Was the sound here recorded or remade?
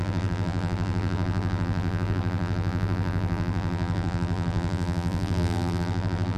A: remade